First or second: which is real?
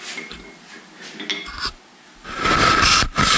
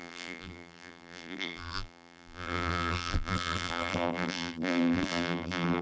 first